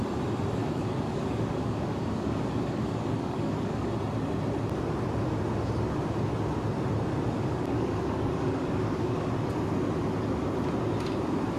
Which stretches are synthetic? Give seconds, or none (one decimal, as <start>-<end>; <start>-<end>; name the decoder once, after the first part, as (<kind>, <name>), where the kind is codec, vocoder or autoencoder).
0.6-3.9 (codec, DAC); 7.3-9.3